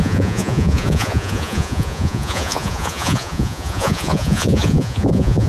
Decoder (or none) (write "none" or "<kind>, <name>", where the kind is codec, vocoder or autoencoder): vocoder, Vocos